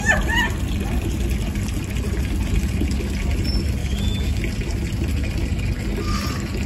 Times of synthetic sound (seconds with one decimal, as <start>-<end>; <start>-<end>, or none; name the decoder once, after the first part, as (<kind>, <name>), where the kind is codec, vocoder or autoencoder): 3.8-4.4 (autoencoder, DAC-VAE)